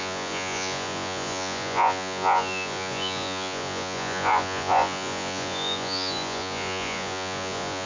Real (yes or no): no